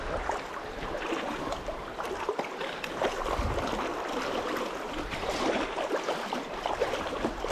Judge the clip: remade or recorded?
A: recorded